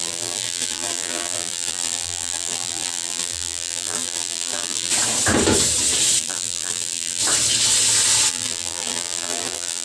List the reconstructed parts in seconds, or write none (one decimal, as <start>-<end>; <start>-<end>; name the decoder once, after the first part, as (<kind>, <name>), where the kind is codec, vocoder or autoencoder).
0.0-4.9 (vocoder, BigVGAN v2); 6.2-7.2; 8.3-9.8

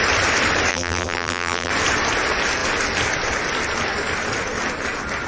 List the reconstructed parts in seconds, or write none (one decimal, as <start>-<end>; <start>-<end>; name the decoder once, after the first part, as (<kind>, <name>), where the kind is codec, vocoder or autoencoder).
0.7-1.7 (vocoder, BigVGAN v2)

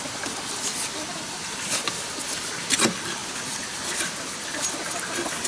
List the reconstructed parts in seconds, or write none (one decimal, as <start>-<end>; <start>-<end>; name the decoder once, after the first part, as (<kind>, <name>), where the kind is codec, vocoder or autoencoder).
none

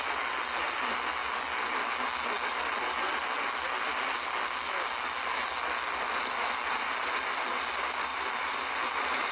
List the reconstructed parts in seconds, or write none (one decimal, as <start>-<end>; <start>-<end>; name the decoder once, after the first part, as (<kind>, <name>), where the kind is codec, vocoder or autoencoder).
8.1-9.3 (vocoder, BigVGAN v2)

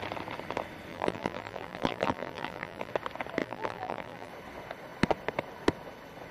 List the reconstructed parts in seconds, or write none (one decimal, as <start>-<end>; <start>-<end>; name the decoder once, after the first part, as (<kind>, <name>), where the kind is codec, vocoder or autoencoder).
0.9-2.9 (vocoder, BigVGAN v2); 3.4-4.3